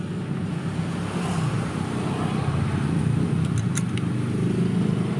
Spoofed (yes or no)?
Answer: no